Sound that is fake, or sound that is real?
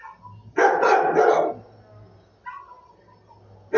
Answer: real